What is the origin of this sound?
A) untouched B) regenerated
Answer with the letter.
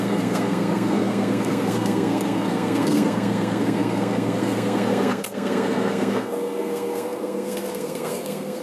B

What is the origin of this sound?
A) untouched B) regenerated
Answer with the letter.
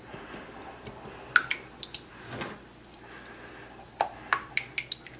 A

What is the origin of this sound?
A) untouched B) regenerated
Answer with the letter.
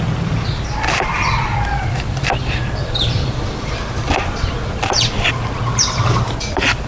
A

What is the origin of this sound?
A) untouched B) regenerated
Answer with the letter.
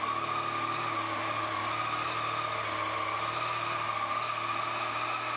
A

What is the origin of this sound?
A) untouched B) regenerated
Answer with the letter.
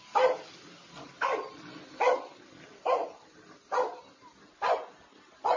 A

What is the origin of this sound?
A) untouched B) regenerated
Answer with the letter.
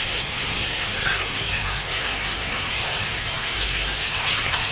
B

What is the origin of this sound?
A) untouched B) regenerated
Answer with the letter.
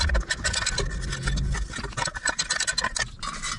A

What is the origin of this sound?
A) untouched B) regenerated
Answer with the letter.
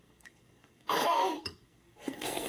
B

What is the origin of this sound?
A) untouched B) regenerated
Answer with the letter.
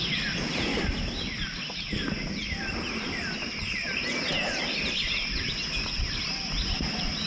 A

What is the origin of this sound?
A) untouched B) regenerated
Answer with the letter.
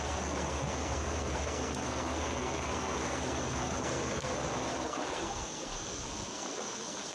B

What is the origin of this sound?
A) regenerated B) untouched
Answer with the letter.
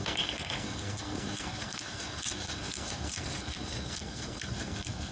A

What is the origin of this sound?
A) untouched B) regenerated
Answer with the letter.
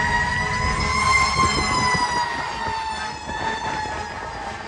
A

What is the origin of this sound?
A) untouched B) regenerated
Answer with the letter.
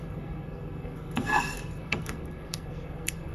B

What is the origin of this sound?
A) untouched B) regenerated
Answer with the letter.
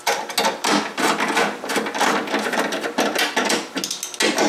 A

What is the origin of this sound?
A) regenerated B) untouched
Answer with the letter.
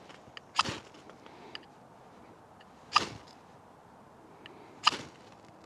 B